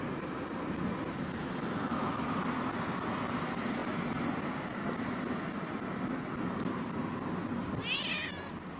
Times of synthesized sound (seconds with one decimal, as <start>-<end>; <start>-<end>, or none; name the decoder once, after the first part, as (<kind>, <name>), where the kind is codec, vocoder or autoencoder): 1.4-2.2 (autoencoder, DAC-VAE)